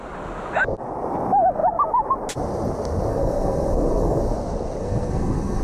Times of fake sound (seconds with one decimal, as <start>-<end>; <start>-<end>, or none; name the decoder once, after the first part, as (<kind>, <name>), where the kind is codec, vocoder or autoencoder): 3.1-4.2 (codec, SNAC); 4.8-5.6